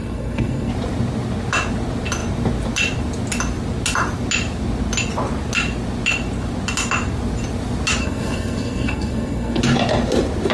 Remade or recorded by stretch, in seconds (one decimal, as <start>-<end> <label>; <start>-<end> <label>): 0.0-0.7 remade; 0.7-8.0 recorded; 8.0-9.6 remade; 9.6-10.5 recorded